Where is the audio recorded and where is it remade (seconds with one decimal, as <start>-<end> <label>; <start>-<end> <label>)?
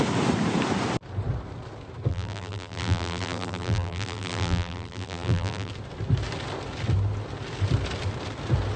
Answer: 0.0-2.1 recorded; 2.1-5.7 remade; 5.7-8.8 recorded